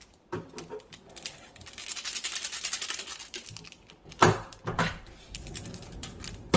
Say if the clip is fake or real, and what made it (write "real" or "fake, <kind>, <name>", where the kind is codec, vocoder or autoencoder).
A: real